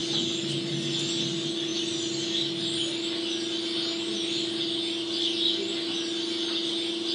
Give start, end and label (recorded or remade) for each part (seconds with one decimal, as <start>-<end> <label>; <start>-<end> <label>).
0.0-7.1 recorded